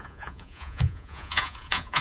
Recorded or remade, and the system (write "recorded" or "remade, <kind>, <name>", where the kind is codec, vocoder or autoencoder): remade, vocoder, Vocos